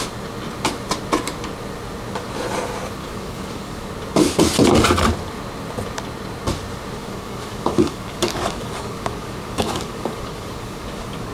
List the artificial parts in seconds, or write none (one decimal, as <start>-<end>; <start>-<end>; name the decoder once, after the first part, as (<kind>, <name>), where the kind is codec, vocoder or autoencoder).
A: 3.0-3.9 (codec, DAC); 7.0-11.3